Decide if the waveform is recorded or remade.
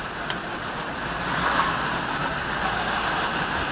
remade